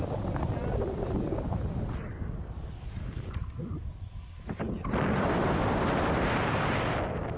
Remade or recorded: recorded